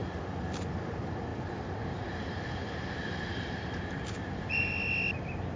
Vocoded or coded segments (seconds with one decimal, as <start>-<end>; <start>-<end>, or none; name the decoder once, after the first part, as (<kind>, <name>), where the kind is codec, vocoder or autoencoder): 1.3-4.7 (vocoder, BigVGAN v2)